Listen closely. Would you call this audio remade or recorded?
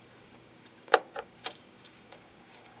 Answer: remade